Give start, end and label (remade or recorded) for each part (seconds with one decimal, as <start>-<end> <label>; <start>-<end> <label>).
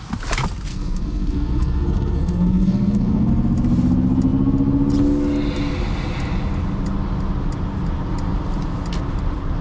0.0-0.7 recorded; 0.7-3.3 remade; 3.3-9.6 recorded